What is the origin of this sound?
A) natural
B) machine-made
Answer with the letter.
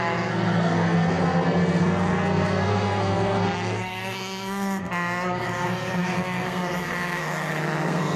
B